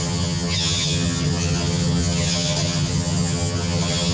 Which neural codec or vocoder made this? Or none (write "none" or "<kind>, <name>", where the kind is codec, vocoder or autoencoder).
vocoder, HiFi-GAN